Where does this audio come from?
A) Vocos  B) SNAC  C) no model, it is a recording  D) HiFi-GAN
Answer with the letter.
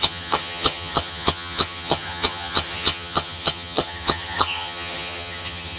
D